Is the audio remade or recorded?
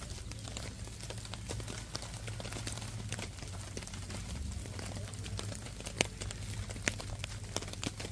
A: recorded